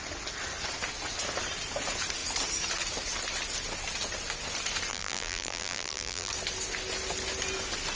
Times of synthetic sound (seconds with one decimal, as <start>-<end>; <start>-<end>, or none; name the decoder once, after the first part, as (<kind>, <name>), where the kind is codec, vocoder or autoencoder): 4.9-6.3 (vocoder, BigVGAN v2)